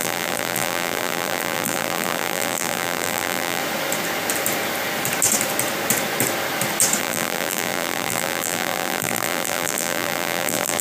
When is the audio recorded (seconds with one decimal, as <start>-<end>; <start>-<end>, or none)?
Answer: 3.6-7.0